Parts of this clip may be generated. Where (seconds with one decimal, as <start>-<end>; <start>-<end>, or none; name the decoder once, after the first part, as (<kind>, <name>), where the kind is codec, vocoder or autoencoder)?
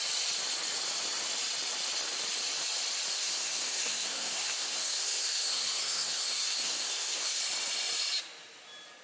3.1-7.4 (codec, SNAC)